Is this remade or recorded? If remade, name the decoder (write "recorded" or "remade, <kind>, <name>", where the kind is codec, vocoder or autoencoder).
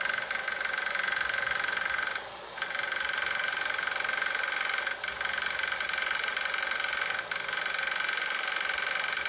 recorded